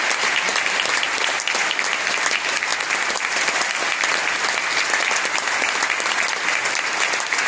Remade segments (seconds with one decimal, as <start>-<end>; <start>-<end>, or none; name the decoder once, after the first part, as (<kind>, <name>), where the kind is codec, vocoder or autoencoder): none